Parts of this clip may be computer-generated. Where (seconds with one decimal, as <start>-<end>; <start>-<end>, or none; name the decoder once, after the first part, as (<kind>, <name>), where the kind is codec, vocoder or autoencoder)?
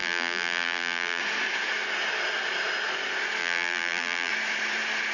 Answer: 0.0-1.2 (vocoder, BigVGAN v2); 3.4-4.3